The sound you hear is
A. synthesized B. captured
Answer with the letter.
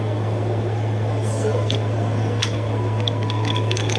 A